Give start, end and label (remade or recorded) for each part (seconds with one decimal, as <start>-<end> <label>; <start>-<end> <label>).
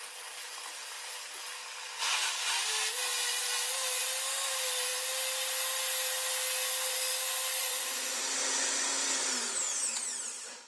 0.0-7.6 recorded; 7.6-8.2 remade; 8.2-10.7 recorded